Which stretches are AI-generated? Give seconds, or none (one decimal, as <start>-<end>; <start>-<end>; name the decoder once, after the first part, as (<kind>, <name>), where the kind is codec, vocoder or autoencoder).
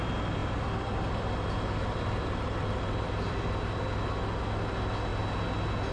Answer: 0.4-3.9 (vocoder, BigVGAN v2)